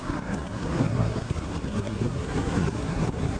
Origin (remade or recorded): remade